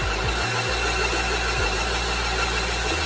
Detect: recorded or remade recorded